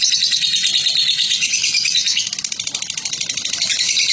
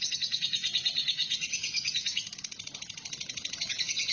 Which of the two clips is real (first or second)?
first